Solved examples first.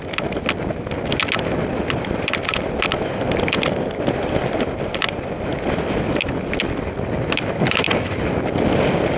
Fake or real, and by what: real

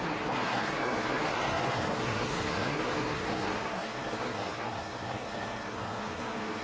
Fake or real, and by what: fake, codec, SNAC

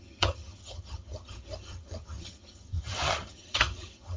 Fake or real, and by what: fake, vocoder, HiFi-GAN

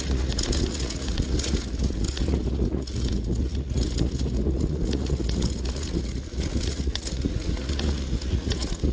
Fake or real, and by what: fake, vocoder, Vocos